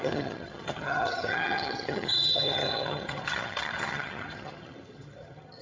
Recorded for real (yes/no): no